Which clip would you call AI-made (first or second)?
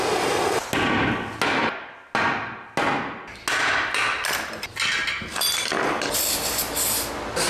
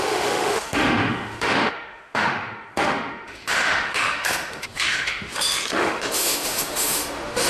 second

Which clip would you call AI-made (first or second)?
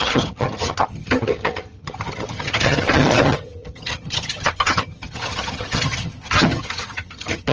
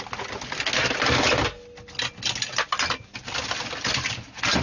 first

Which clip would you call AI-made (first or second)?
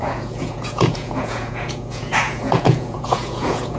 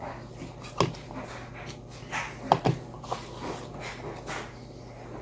first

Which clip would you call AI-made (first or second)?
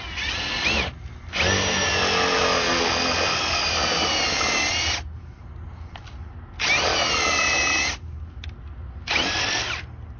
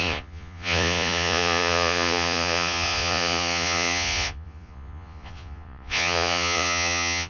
second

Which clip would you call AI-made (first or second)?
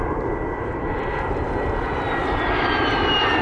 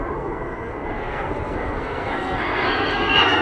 second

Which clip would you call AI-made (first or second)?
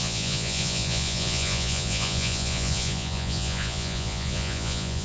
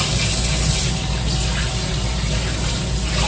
first